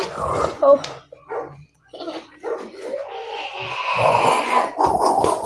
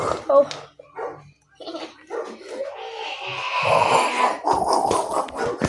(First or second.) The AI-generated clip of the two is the first